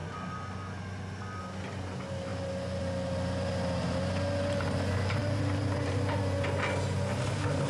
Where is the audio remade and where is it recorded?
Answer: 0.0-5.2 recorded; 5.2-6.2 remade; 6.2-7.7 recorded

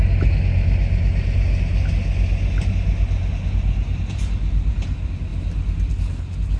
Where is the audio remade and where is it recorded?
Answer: 0.0-3.9 recorded; 3.9-4.7 remade; 4.7-6.6 recorded

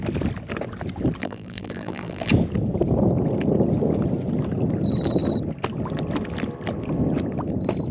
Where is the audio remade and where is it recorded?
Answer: 0.0-1.2 recorded; 1.2-2.3 remade; 2.3-7.9 recorded

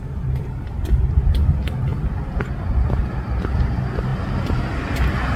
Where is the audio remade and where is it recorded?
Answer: 0.0-5.4 recorded

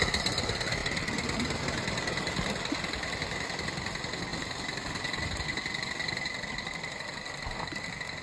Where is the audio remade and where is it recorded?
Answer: 0.0-4.3 recorded; 4.3-6.5 remade; 6.5-8.2 recorded

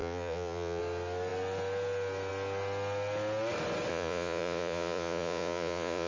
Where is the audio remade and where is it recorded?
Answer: 0.0-0.8 remade; 0.8-3.9 recorded; 3.9-6.1 remade

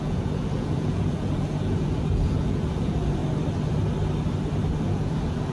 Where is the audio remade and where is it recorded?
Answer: 0.0-3.2 remade; 3.2-4.7 recorded; 4.7-5.5 remade

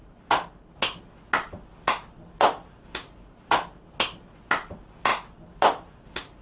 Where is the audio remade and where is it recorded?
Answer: 0.0-6.4 recorded